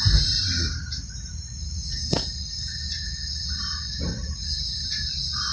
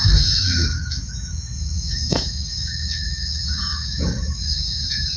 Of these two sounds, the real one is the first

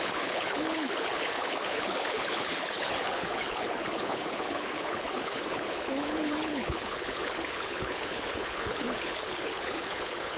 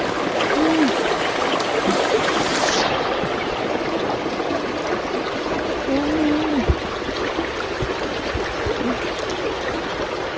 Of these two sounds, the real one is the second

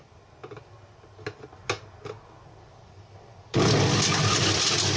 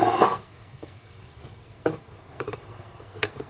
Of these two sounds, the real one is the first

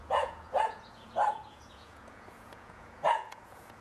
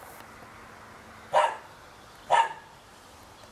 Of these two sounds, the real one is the second